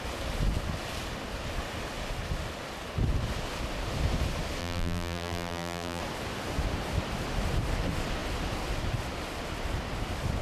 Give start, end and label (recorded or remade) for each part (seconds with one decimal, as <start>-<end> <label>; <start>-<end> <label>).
0.0-4.6 recorded; 4.6-6.0 remade; 6.0-10.4 recorded